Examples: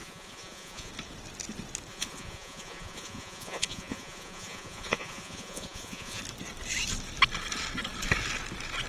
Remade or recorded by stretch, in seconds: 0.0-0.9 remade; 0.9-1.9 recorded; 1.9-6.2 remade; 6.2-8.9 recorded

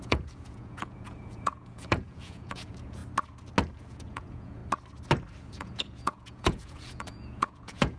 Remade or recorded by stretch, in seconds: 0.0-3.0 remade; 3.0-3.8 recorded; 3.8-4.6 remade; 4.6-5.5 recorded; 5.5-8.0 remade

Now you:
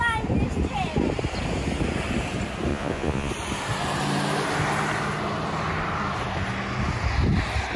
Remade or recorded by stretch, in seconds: 0.0-2.7 recorded; 2.7-3.3 remade; 3.3-7.8 recorded

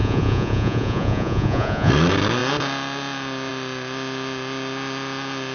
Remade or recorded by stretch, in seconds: 0.0-1.9 remade; 1.9-5.5 recorded